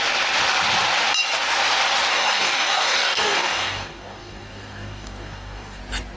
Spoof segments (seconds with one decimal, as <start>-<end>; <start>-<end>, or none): 2.1-5.8